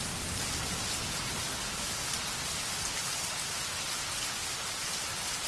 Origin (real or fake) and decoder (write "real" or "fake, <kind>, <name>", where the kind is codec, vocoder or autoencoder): real